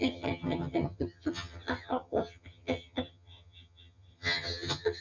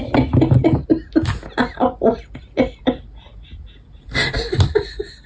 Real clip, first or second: second